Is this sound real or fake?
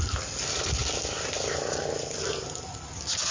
real